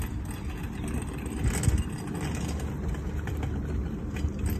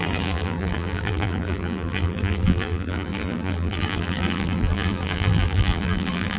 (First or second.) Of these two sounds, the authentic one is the first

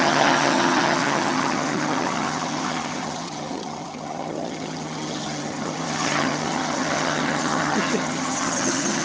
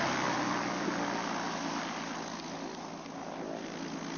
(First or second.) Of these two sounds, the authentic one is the second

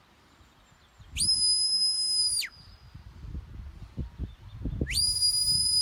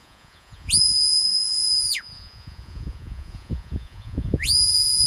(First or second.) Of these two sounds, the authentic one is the first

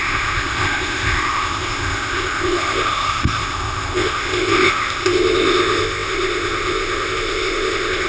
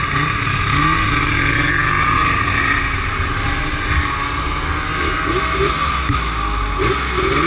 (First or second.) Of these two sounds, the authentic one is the second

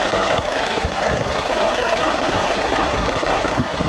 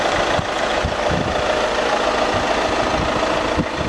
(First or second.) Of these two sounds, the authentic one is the second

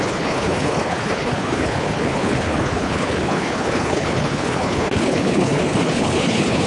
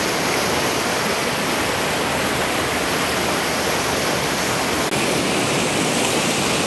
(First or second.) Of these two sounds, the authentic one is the second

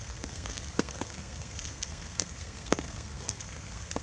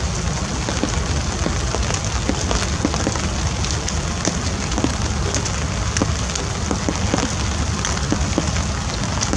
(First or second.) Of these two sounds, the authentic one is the second